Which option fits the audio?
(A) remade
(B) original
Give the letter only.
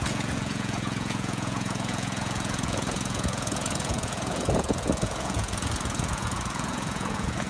A